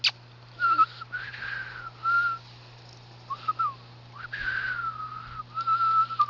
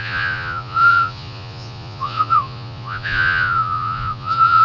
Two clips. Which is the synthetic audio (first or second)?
second